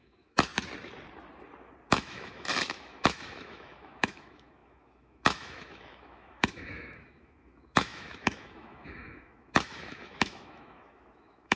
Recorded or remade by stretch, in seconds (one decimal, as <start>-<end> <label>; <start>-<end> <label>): 0.0-0.5 remade; 0.5-1.9 recorded; 1.9-11.6 remade